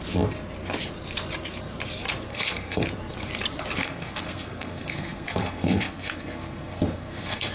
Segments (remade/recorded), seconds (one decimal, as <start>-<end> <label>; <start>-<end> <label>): 0.0-2.3 recorded; 2.3-2.8 remade; 2.8-3.8 recorded; 3.8-7.5 remade